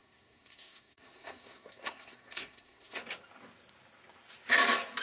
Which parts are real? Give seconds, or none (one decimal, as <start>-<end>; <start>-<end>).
3.0-5.0